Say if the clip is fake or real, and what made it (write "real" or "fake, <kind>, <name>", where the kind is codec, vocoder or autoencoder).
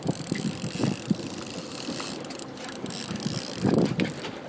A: fake, vocoder, BigVGAN v2